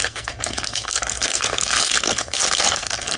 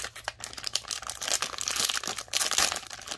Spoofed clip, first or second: first